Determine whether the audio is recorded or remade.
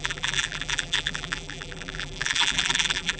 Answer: remade